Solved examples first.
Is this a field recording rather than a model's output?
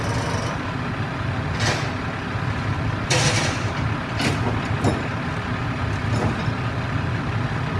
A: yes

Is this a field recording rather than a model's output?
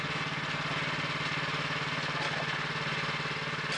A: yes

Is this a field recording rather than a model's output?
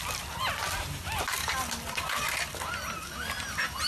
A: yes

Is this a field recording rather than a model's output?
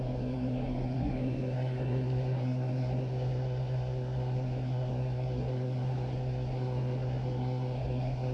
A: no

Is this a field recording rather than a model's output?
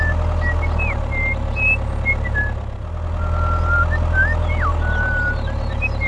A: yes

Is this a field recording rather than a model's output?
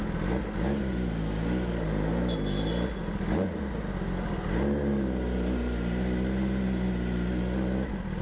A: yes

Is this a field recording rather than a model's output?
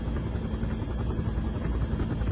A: yes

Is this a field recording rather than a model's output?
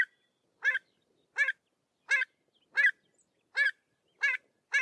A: yes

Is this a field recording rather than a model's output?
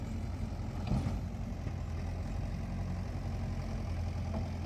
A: yes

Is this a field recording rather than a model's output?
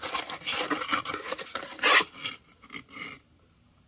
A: yes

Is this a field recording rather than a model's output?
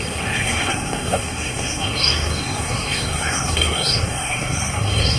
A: no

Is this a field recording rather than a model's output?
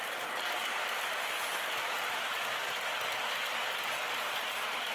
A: yes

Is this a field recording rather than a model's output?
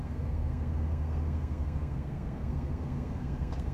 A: no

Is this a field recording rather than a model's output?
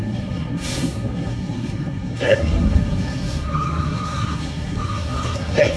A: no